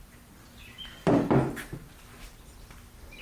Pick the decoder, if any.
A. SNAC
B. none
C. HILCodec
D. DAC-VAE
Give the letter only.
B